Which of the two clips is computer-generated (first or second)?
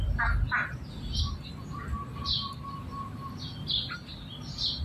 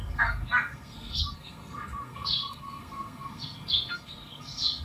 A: second